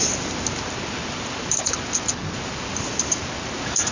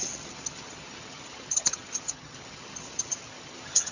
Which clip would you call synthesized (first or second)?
second